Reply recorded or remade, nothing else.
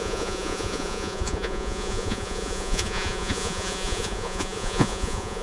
remade